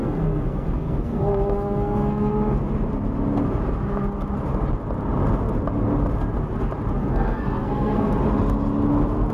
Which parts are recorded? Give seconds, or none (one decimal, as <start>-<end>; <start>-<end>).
2.3-7.0; 8.1-9.3